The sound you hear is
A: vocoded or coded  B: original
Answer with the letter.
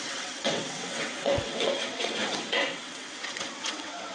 A